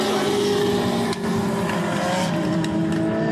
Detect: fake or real real